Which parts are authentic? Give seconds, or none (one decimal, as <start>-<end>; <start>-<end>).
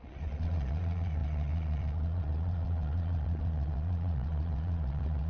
none